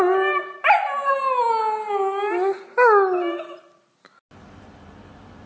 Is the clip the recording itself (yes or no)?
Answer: yes